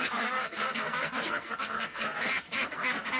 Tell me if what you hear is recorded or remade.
remade